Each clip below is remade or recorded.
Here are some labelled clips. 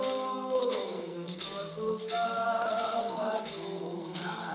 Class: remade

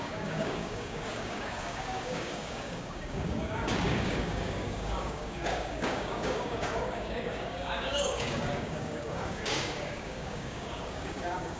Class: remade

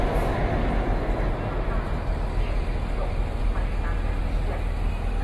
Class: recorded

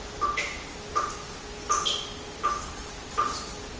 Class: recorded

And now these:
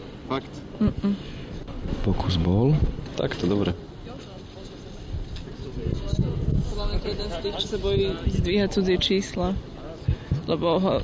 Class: recorded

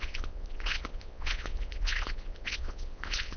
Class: remade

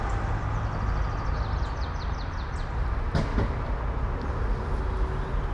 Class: recorded